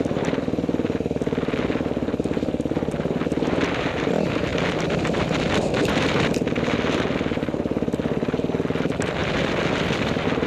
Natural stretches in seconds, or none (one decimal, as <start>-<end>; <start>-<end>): 0.0-10.5